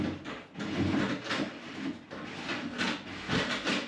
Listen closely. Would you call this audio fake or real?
real